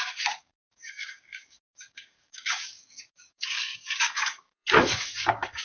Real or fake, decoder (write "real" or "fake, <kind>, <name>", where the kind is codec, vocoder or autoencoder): fake, codec, DAC